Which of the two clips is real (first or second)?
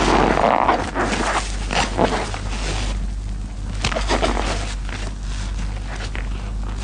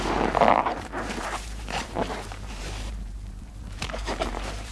first